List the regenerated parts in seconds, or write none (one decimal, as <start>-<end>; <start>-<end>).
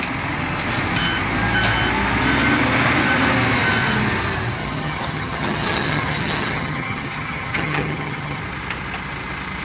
4.6-8.4